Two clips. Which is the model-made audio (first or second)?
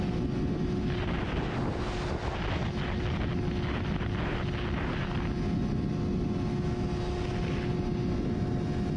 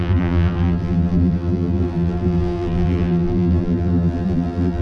second